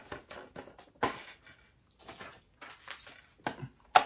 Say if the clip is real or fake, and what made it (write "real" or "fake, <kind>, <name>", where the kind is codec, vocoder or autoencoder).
real